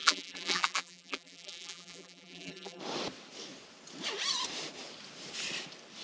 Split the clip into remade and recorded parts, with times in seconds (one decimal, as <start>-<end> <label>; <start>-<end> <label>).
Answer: 0.0-2.8 remade; 2.8-6.0 recorded